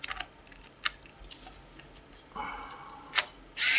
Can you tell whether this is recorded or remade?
recorded